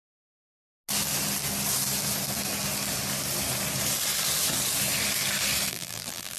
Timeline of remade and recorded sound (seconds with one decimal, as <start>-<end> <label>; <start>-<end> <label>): 0.0-5.7 recorded; 5.7-6.4 remade